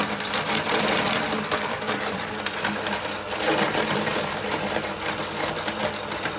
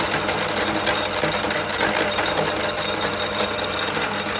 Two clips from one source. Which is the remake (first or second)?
first